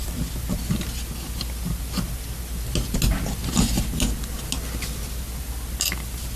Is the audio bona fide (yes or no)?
yes